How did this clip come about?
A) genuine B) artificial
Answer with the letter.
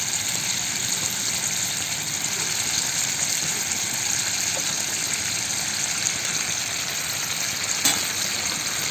A